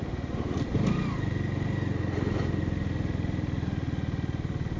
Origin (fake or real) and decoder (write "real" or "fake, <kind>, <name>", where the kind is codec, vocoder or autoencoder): real